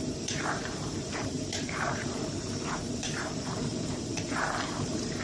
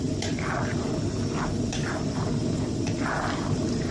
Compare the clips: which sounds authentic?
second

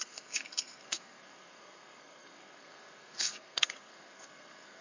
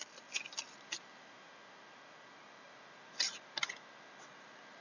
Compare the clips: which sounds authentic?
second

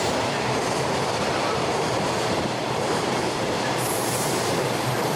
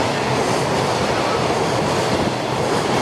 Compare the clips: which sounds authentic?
second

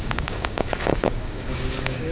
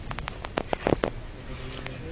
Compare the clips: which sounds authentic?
second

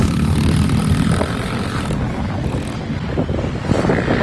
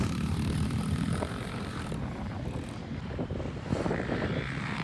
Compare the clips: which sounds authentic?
first